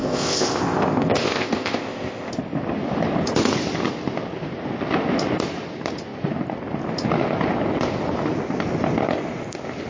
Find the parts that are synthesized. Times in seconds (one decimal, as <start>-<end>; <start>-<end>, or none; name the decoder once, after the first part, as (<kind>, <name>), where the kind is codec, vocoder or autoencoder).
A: 0.0-2.3 (codec, ZipCodec)